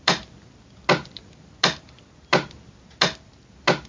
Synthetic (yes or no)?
no